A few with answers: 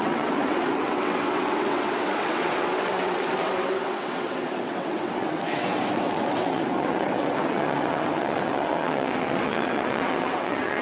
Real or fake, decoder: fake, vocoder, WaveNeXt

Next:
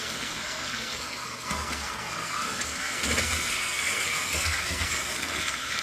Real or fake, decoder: fake, codec, SNAC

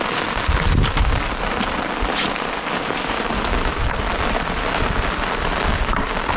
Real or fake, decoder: real